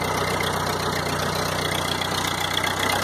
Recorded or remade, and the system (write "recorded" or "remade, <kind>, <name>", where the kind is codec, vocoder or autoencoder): recorded